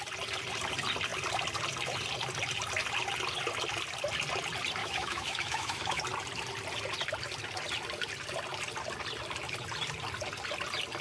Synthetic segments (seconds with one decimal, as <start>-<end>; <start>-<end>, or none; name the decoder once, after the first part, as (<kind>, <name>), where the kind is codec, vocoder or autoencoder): 4.8-6.0 (autoencoder, DAC-VAE)